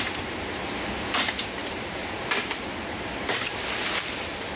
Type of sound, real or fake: real